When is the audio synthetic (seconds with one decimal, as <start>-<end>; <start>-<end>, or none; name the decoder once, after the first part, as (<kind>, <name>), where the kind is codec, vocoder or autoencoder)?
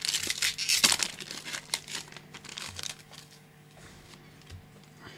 2.5-4.1 (codec, DAC)